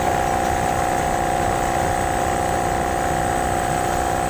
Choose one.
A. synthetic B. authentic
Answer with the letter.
B